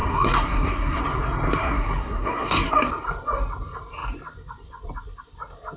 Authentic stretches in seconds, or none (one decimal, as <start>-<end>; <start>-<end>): 1.0-1.6; 2.7-5.8